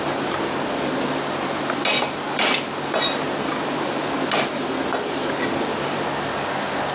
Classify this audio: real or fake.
real